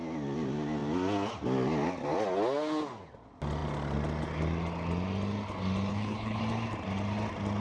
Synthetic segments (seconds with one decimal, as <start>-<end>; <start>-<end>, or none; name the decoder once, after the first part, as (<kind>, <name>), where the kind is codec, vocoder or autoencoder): 5.9-6.4 (codec, HILCodec)